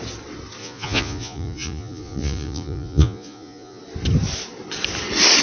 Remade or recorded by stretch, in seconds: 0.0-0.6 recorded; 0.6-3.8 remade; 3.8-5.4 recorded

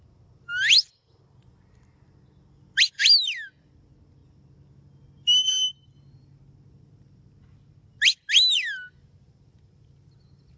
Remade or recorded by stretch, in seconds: 0.0-10.6 recorded

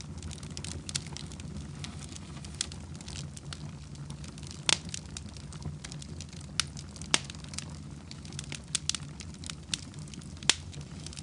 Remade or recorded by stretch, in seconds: 0.0-11.2 recorded

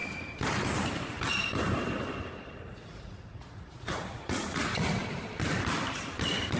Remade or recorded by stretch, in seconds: 0.0-2.7 recorded; 2.7-4.6 remade; 4.6-6.6 recorded

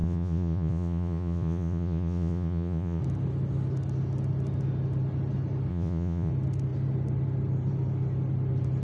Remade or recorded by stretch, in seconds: 0.0-3.0 remade; 3.0-5.7 recorded; 5.7-6.3 remade; 6.3-8.8 recorded

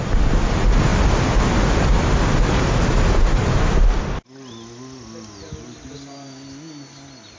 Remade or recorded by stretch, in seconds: 0.0-7.4 recorded

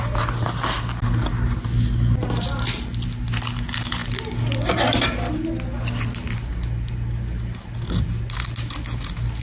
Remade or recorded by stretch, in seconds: 0.0-9.4 recorded